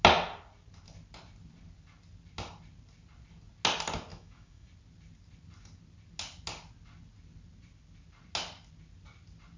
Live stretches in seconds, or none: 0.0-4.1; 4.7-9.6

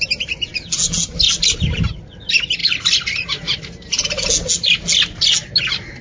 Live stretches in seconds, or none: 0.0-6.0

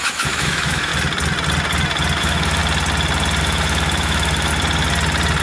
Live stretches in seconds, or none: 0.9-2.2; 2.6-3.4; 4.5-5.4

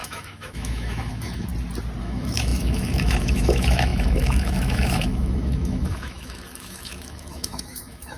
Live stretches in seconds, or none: 1.5-2.0